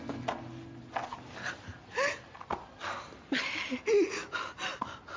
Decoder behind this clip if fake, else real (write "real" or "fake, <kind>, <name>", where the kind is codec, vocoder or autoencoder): real